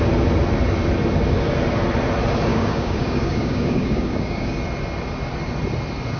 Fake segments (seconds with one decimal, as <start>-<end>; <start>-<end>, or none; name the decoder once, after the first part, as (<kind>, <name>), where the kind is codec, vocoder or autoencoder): 2.5-4.6 (codec, DAC)